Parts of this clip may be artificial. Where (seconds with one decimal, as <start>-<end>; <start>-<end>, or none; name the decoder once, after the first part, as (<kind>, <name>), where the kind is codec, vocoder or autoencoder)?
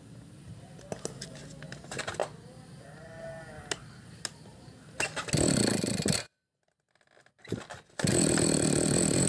none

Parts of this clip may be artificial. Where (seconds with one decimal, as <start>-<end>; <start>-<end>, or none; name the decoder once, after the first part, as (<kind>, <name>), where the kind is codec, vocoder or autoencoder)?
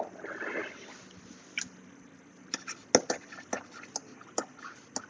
none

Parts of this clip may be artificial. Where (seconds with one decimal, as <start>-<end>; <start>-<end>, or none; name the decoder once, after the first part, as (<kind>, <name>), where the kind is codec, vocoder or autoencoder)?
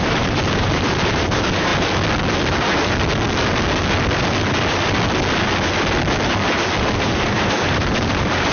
0.0-1.7 (vocoder, BigVGAN v2); 6.8-8.5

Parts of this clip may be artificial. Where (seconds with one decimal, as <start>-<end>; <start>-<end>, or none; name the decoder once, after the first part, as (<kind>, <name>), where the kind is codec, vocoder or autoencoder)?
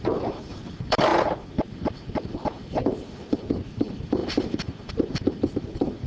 0.0-1.1 (vocoder, BigVGAN v2); 1.7-6.1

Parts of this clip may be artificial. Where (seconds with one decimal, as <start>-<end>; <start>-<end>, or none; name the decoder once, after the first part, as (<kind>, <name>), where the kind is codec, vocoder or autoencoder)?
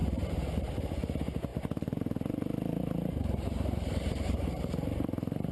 0.0-0.9 (vocoder, BigVGAN v2); 1.5-4.6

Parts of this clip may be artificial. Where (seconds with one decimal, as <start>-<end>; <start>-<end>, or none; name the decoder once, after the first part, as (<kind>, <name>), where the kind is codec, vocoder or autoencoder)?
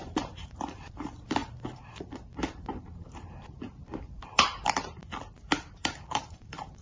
0.0-5.0 (vocoder, BigVGAN v2); 5.7-6.8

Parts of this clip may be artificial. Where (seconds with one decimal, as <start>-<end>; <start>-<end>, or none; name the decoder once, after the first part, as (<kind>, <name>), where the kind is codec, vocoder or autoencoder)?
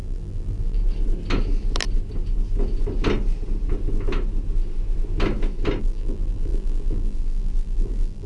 0.0-0.8 (vocoder, BigVGAN v2); 5.8-8.3